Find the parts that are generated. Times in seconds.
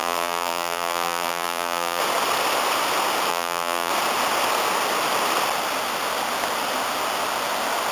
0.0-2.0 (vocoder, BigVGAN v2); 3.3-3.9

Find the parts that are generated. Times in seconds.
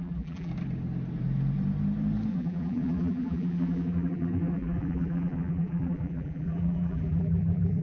0.0-0.5 (vocoder, BigVGAN v2); 2.3-7.8